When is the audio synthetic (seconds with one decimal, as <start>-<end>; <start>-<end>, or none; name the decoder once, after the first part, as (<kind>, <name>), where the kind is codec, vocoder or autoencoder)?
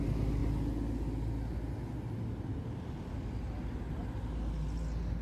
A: none